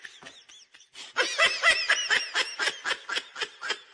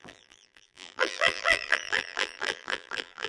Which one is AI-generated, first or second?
second